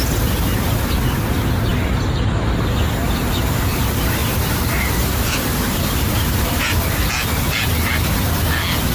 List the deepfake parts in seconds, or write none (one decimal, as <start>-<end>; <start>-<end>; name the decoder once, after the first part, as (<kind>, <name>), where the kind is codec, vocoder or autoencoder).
4.2-6.8 (vocoder, BigVGAN v2)